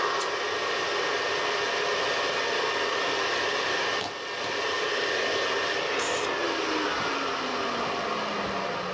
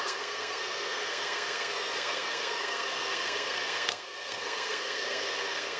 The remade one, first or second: second